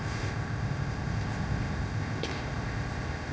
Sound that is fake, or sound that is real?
fake